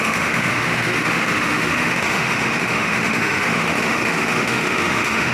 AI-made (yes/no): yes